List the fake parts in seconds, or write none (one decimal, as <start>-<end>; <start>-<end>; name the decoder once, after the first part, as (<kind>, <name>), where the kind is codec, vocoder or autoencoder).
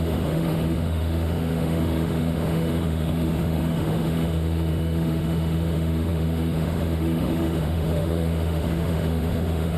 0.0-9.8 (autoencoder, DAC-VAE)